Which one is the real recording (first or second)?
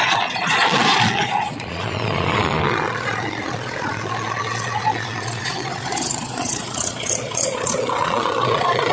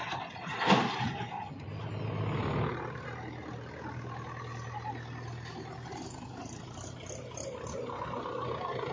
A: second